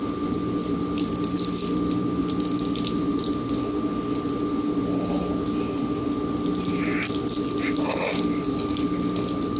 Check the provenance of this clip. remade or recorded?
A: recorded